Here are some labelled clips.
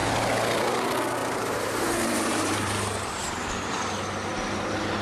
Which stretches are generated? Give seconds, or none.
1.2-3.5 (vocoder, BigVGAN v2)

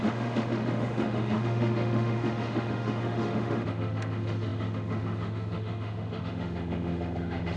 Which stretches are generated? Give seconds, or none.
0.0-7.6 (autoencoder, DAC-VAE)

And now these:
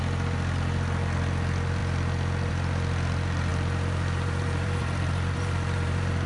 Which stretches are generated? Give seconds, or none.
1.8-2.5 (vocoder, BigVGAN v2); 3.5-6.3

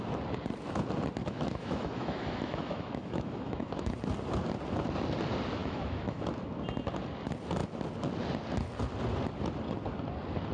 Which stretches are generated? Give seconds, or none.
1.2-3.9 (autoencoder, DAC-VAE); 5.6-6.2

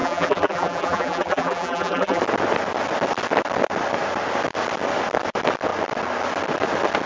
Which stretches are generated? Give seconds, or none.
0.0-2.2 (vocoder, BigVGAN v2)

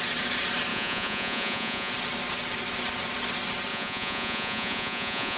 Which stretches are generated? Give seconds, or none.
0.7-1.9 (vocoder, Vocos); 3.7-5.4